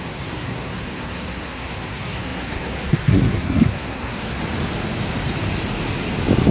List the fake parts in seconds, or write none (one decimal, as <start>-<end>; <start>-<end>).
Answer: 0.0-4.4